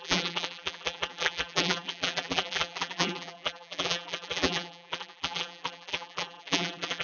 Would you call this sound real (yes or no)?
no